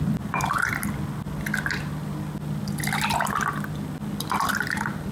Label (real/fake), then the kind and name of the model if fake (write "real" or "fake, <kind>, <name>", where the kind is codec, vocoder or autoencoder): real